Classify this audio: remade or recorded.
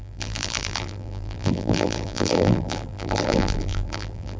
remade